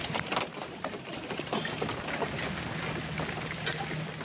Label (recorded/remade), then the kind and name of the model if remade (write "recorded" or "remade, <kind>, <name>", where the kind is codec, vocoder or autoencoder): recorded